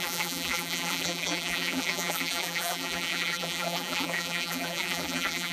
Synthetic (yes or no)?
yes